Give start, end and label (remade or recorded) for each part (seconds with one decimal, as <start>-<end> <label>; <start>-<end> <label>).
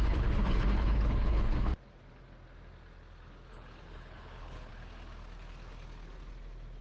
0.0-1.7 remade; 1.7-3.5 recorded; 3.5-4.7 remade; 4.7-6.8 recorded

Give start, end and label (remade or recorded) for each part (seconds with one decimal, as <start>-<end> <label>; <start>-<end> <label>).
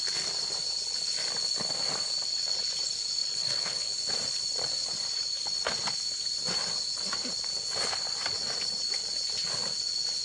0.0-3.2 recorded; 3.2-3.9 remade; 3.9-10.2 recorded